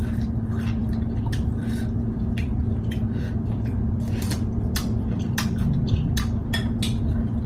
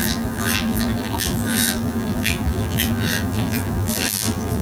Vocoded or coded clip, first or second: second